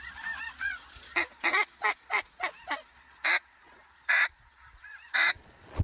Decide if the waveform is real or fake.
fake